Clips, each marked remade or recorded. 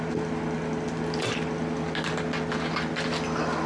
recorded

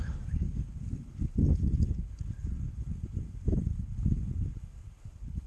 remade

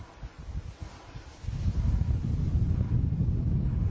recorded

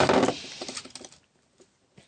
recorded